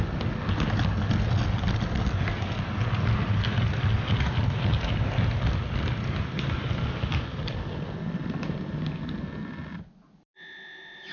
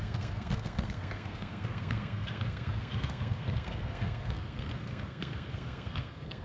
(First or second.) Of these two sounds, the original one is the first